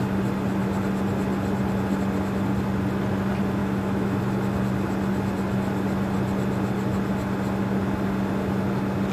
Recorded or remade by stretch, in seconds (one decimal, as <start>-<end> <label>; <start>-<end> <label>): 0.0-3.6 recorded; 3.6-4.2 remade; 4.2-9.1 recorded